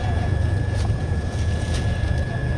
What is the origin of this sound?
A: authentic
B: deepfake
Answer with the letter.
B